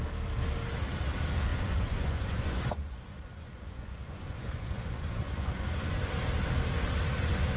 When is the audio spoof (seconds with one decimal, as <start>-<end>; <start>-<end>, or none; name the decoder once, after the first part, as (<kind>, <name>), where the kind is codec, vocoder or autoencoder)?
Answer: 1.5-6.1 (vocoder, Vocos)